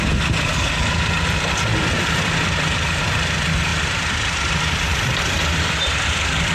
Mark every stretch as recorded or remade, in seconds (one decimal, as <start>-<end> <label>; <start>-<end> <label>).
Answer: 0.0-1.7 recorded; 1.7-3.0 remade; 3.0-3.7 recorded; 3.7-4.4 remade; 4.4-4.9 recorded; 4.9-6.5 remade

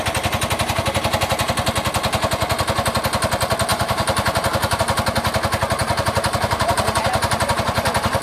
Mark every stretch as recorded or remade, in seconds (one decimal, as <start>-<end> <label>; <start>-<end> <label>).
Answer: 0.0-3.7 recorded; 3.7-4.8 remade; 4.8-5.8 recorded; 5.8-7.5 remade; 7.5-8.2 recorded

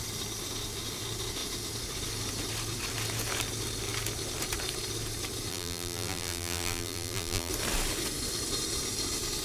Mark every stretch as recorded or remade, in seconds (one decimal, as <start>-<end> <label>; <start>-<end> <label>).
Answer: 0.0-5.5 recorded; 5.5-7.5 remade; 7.5-9.4 recorded

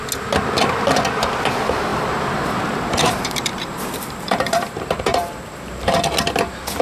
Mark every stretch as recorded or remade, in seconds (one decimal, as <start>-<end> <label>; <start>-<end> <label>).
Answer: 0.0-1.9 recorded; 1.9-6.0 remade; 6.0-6.8 recorded